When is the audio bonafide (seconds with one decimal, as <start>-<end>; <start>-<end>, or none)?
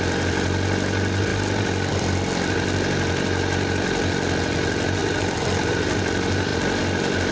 0.0-7.3